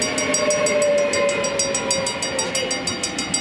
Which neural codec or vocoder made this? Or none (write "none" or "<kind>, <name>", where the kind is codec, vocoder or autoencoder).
none